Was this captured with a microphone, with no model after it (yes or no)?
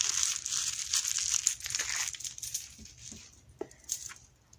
yes